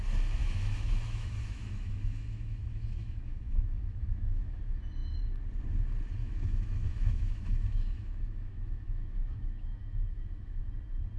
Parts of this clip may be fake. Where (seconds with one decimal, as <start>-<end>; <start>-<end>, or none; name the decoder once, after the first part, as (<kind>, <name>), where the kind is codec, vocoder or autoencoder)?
0.4-4.6 (autoencoder, DAC-VAE); 6.2-10.6